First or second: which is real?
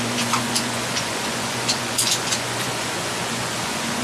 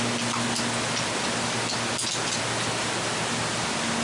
second